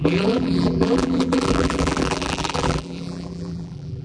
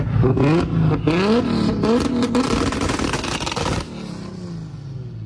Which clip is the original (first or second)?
second